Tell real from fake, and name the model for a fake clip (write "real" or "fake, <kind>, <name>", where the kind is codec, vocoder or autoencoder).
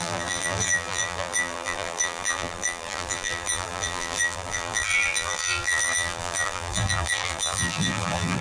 fake, vocoder, BigVGAN v2